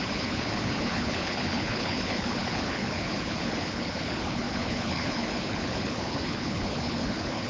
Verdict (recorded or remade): remade